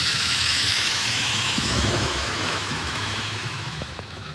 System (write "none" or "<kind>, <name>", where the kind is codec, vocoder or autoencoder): autoencoder, DAC-VAE